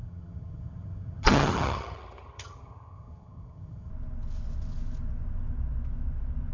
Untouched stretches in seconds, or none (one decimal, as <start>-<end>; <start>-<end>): 3.9-6.5